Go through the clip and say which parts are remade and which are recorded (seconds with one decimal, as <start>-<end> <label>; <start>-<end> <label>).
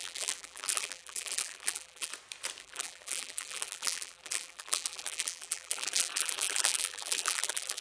0.0-2.1 remade; 2.1-2.6 recorded; 2.6-7.8 remade